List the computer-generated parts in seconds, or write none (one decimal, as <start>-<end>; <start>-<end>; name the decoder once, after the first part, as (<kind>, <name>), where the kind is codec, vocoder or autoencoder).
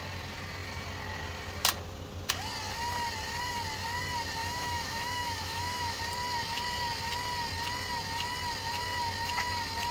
4.4-6.0 (autoencoder, DAC-VAE)